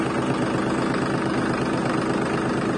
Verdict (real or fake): real